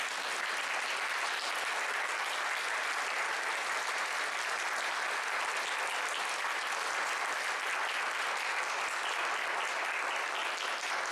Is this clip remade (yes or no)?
no